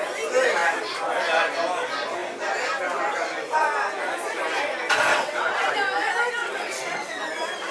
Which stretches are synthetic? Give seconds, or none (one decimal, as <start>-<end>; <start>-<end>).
5.1-5.7; 6.4-7.2